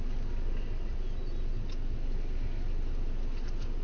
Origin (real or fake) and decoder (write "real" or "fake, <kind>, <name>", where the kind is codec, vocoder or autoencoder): real